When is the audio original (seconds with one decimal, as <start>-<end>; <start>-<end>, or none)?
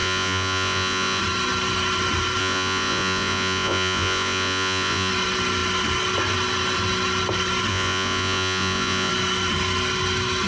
1.2-2.4; 5.1-7.7; 9.1-10.5